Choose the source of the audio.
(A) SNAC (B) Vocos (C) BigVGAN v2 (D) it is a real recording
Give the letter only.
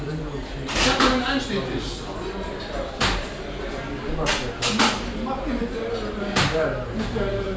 D